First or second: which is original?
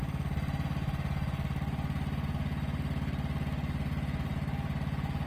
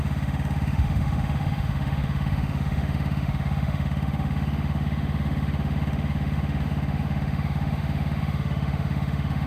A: first